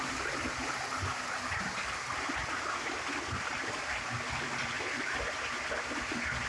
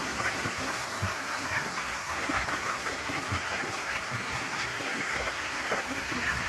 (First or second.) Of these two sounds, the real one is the first